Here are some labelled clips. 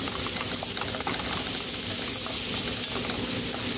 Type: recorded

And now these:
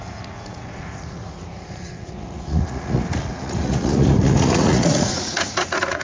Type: remade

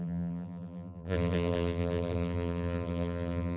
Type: remade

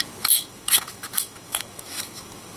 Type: remade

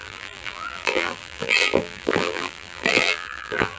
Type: remade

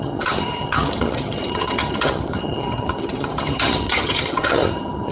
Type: remade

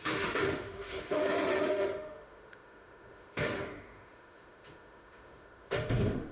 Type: remade